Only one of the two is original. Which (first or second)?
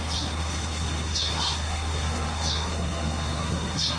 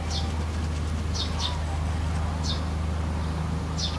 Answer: second